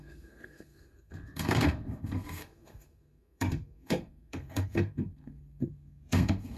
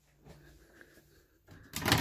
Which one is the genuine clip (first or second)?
second